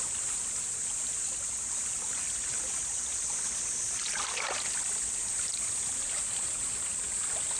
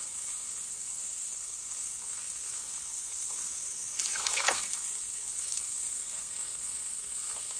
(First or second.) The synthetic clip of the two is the second